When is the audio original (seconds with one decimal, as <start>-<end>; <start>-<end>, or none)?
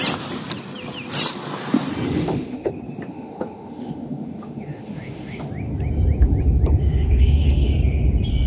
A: 0.0-2.2; 2.7-3.1; 5.5-6.8; 7.7-8.5